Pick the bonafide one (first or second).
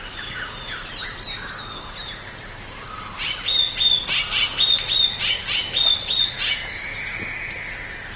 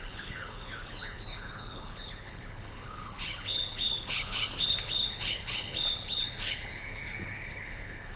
first